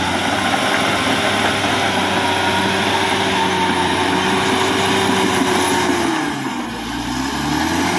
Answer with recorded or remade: recorded